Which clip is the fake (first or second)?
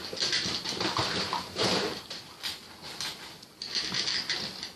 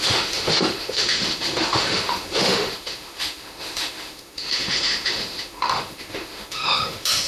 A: second